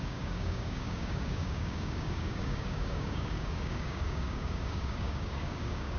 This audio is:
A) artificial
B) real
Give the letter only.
A